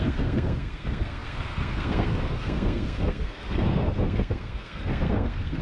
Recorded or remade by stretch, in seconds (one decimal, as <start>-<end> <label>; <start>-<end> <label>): 0.0-5.6 remade